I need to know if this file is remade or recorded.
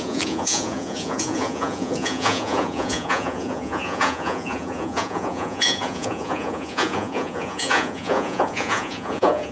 remade